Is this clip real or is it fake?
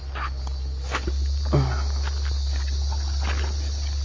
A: real